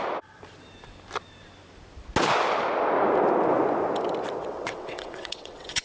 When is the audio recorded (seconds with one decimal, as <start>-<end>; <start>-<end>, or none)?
0.0-4.4